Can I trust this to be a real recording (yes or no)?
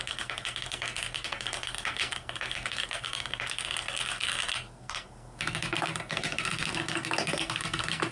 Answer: no